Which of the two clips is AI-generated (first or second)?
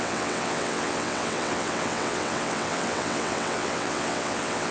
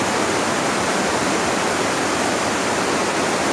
first